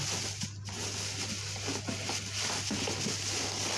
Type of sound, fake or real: real